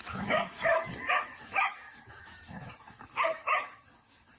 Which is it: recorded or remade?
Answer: remade